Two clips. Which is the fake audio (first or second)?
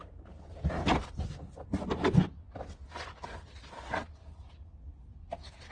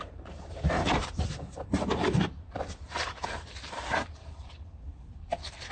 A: second